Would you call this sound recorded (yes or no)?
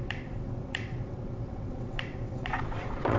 no